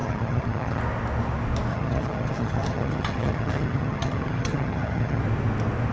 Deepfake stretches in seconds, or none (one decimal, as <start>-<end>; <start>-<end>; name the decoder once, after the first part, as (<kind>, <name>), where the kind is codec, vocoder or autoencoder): 0.0-0.8 (vocoder, HiFi-GAN); 1.7-5.2